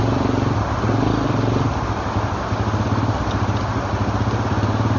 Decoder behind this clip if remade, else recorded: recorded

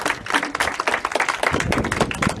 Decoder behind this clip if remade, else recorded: recorded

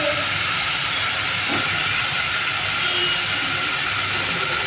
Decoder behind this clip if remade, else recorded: recorded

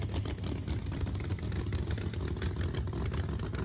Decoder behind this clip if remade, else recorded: recorded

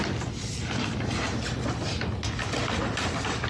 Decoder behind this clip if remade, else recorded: recorded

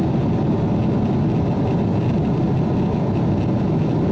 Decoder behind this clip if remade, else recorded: recorded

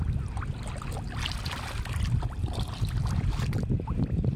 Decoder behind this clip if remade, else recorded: recorded